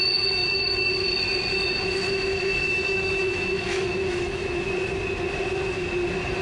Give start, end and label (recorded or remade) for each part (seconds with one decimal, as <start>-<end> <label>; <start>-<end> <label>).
0.0-0.4 recorded; 0.4-0.9 remade; 0.9-2.6 recorded; 2.6-4.7 remade; 4.7-6.4 recorded